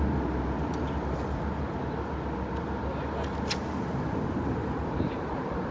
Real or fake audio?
real